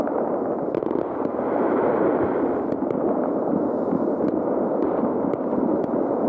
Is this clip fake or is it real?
real